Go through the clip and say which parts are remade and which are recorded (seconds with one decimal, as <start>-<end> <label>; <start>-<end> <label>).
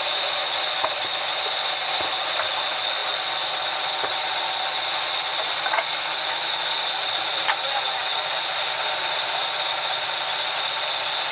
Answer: 0.0-11.3 recorded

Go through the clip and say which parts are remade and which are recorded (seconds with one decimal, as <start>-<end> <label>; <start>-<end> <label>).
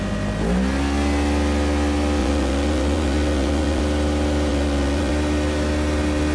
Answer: 0.0-2.2 recorded; 2.2-3.8 remade; 3.8-4.5 recorded; 4.5-5.1 remade; 5.1-6.3 recorded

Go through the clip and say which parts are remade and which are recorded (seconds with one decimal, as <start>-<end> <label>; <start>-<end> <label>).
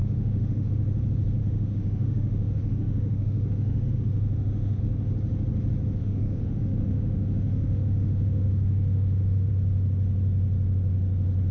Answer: 0.0-0.7 remade; 0.7-1.4 recorded; 1.4-4.8 remade; 4.8-6.0 recorded; 6.0-9.5 remade; 9.5-11.5 recorded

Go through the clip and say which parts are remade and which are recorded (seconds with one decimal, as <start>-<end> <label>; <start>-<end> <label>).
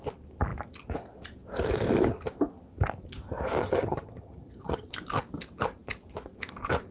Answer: 0.0-3.6 recorded; 3.6-4.9 remade; 4.9-6.9 recorded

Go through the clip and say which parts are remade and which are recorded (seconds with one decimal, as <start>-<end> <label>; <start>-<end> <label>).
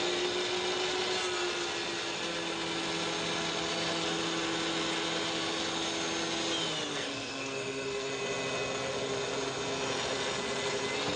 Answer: 0.0-6.9 recorded; 6.9-8.1 remade; 8.1-11.2 recorded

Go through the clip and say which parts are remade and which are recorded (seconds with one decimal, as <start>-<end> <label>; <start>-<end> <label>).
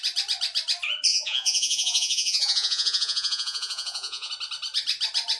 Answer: 0.0-1.1 recorded; 1.1-4.3 remade; 4.3-5.4 recorded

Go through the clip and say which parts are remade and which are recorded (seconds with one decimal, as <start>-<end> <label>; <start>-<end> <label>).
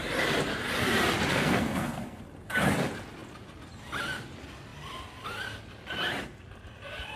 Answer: 0.0-1.3 recorded; 1.3-2.2 remade; 2.2-7.2 recorded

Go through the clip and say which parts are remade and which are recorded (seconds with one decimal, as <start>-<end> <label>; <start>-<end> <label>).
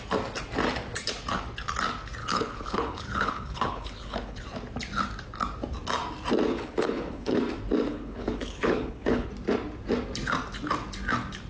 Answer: 0.0-2.2 recorded; 2.2-4.4 remade; 4.4-6.5 recorded; 6.5-7.4 remade; 7.4-7.9 recorded; 7.9-9.3 remade; 9.3-11.5 recorded